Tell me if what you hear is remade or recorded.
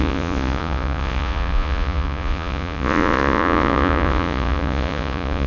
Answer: remade